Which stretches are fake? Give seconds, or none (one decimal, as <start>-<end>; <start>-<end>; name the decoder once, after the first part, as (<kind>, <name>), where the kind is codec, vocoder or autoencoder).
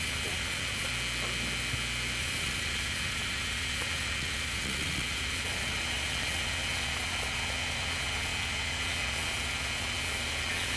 0.0-0.9 (vocoder, Vocos); 2.2-10.8